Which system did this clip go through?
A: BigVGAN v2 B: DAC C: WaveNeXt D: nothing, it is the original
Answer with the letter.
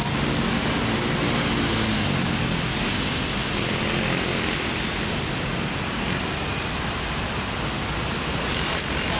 D